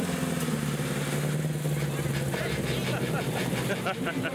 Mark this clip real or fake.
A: real